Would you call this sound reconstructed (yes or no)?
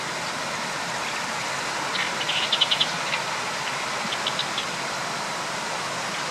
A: no